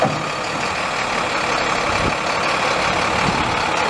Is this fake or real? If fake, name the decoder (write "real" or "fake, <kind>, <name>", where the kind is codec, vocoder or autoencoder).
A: real